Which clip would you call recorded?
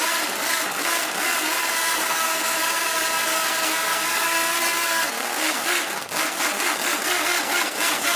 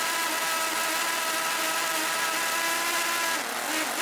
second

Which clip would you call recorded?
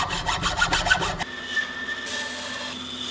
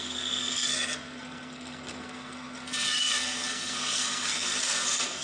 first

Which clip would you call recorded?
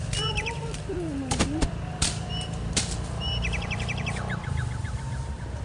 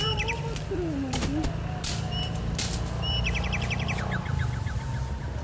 second